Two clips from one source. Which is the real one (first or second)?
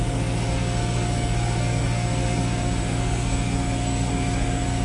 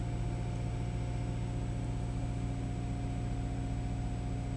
second